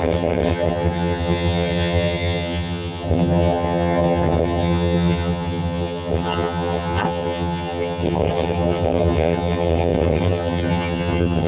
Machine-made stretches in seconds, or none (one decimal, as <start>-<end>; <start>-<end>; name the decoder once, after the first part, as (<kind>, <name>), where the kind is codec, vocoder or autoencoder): 0.0-11.5 (vocoder, HiFi-GAN)